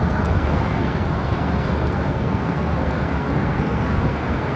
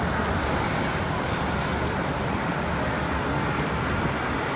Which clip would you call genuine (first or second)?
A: second